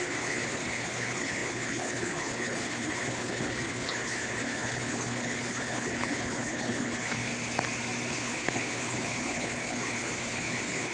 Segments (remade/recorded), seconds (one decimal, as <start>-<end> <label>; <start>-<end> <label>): 0.0-7.3 remade; 7.3-8.1 recorded; 8.1-10.9 remade